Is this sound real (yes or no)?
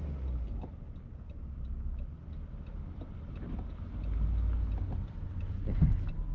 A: yes